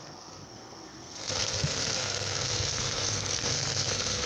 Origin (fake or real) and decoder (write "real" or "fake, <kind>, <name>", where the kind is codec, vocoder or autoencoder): fake, codec, SNAC